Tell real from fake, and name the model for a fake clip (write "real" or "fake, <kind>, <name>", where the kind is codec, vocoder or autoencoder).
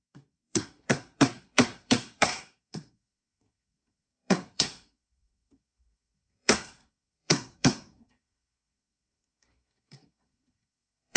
fake, codec, SNAC